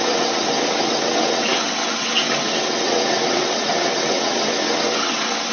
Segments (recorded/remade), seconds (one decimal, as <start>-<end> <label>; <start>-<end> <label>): 0.0-5.5 remade

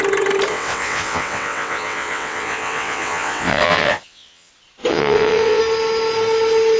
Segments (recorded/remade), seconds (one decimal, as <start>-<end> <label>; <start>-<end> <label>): 0.0-0.5 recorded; 0.5-4.5 remade; 4.5-4.9 recorded; 4.9-5.6 remade; 5.6-6.8 recorded

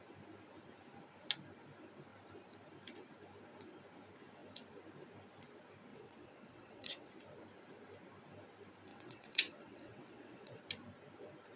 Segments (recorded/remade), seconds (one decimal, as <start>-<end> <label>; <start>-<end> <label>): 0.0-5.9 recorded; 5.9-7.1 remade; 7.1-8.9 recorded; 8.9-10.6 remade; 10.6-11.6 recorded

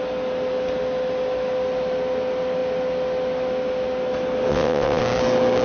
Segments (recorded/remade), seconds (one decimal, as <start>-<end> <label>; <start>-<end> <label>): 0.0-4.5 recorded; 4.5-5.0 remade; 5.0-5.6 recorded

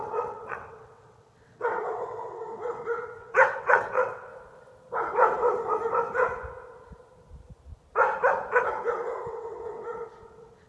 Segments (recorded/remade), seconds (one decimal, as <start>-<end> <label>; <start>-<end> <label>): 0.0-4.3 remade; 4.3-9.3 recorded; 9.3-10.7 remade

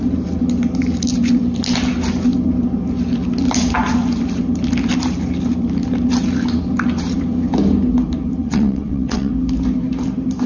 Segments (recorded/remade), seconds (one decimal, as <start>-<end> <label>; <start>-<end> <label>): 0.0-8.4 recorded; 8.4-9.3 remade; 9.3-10.5 recorded

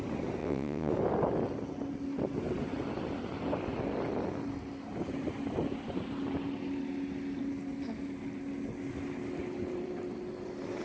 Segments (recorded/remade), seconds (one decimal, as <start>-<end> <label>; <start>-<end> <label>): 0.0-0.4 recorded; 0.4-0.9 remade; 0.9-10.8 recorded